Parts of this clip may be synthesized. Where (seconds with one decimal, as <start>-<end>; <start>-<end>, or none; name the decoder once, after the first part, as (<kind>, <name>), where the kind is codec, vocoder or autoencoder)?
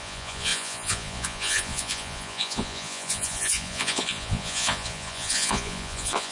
0.0-6.3 (vocoder, Vocos)